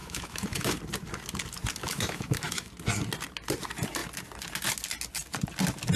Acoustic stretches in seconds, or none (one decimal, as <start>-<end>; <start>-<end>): 0.8-1.8; 2.7-6.0